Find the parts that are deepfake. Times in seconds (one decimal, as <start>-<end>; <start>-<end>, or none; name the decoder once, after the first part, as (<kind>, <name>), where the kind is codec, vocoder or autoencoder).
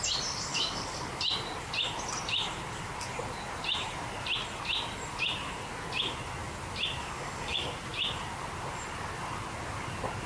0.5-1.1 (codec, DAC); 7.0-7.7